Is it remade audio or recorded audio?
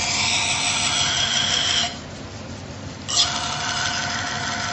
recorded